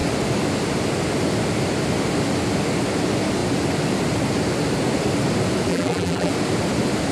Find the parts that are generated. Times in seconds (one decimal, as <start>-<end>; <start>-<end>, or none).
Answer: 5.7-6.3